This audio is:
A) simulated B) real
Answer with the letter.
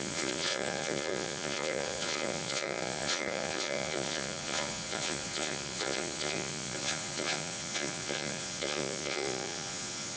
A